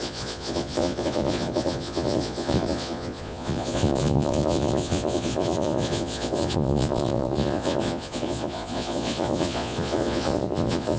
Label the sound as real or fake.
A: fake